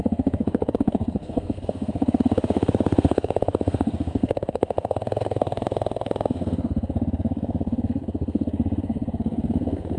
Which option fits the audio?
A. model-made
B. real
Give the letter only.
A